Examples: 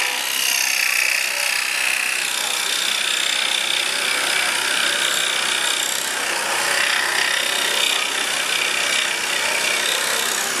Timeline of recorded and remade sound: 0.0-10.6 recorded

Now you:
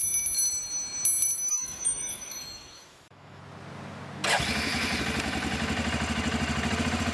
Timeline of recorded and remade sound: 0.0-1.5 recorded; 1.5-3.4 remade; 3.4-7.1 recorded

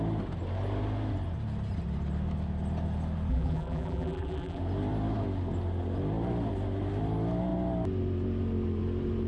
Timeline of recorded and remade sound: 0.0-3.3 recorded; 3.3-4.6 remade; 4.6-9.3 recorded

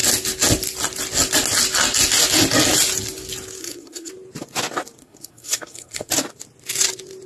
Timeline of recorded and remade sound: 0.0-3.6 recorded; 3.6-4.1 remade; 4.1-5.0 recorded; 5.0-6.1 remade; 6.1-7.3 recorded

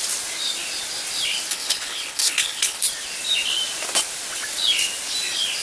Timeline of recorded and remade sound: 0.0-1.5 recorded; 1.5-2.8 remade; 2.8-5.6 recorded